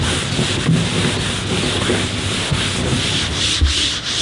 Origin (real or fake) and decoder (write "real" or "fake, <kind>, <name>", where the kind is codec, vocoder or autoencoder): real